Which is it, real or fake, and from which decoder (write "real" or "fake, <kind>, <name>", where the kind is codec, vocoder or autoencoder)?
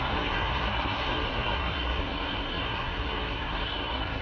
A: fake, codec, SNAC